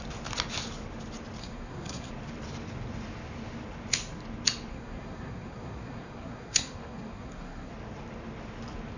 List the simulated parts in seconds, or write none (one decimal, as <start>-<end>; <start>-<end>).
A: 1.4-2.1; 4.7-7.7